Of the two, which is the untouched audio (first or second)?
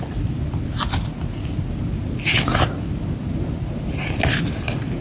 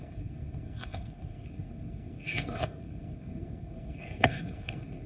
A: first